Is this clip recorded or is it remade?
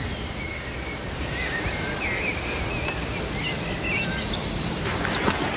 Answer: recorded